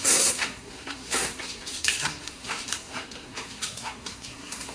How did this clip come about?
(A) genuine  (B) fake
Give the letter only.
B